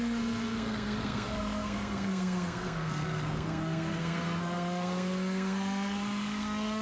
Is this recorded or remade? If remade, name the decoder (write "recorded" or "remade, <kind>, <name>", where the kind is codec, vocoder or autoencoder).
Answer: remade, codec, SNAC